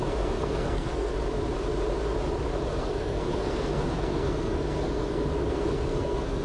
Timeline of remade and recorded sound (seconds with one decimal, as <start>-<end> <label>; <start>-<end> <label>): 0.0-1.1 remade; 1.1-2.7 recorded; 2.7-6.4 remade